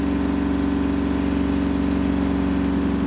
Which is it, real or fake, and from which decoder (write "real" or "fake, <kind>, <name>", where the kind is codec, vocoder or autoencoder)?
real